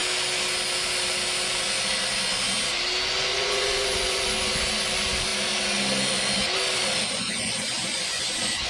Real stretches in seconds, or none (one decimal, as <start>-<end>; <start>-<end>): 0.0-3.1; 5.3-7.1